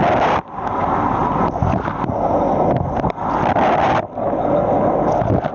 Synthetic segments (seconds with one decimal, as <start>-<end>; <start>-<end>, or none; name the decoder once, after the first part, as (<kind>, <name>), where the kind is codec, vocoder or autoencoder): none